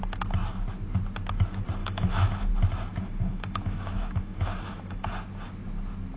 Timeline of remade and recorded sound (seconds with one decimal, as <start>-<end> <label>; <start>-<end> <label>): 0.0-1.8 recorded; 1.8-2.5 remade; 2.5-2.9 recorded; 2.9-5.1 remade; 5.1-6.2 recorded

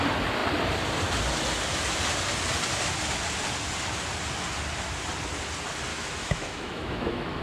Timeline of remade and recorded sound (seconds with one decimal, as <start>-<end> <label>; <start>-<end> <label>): 0.0-5.9 recorded; 5.9-7.4 remade

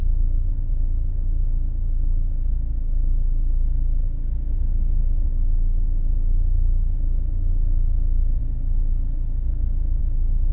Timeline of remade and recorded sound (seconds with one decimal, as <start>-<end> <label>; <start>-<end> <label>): 0.0-10.5 recorded

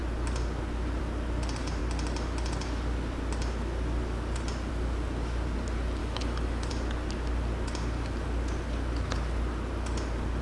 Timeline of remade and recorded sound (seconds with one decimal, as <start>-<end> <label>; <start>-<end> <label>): 0.0-6.0 recorded; 6.0-6.7 remade; 6.7-10.4 recorded

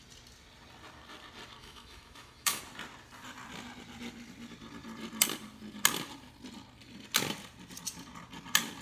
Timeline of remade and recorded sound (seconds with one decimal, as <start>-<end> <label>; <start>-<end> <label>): 0.0-1.6 recorded; 1.6-2.6 remade; 2.6-8.8 recorded